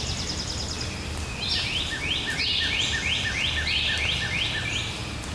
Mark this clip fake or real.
real